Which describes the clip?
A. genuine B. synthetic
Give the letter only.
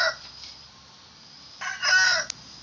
A